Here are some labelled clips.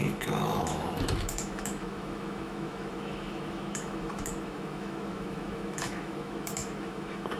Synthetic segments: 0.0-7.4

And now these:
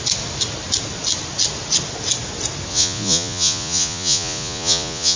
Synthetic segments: 2.7-5.2

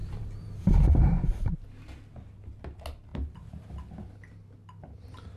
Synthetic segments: 0.0-0.7; 3.1-3.7

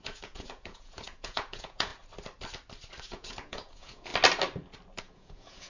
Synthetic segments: 0.0-1.9; 3.0-4.1; 5.0-5.7

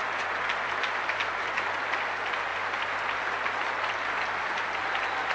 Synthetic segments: none

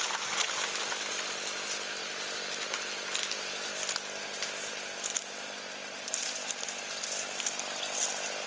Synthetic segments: none

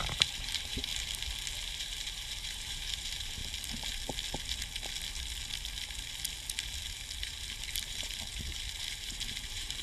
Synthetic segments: 0.0-0.9; 1.8-3.4; 7.4-9.8

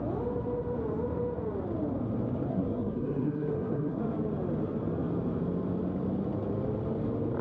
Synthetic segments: 2.5-4.0